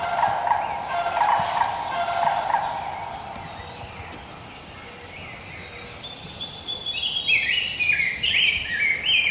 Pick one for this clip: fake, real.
real